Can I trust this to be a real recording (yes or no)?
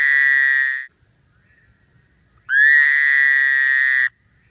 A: yes